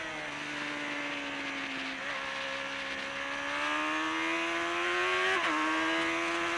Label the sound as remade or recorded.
recorded